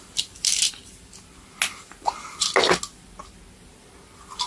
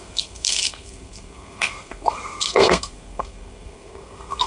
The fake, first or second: second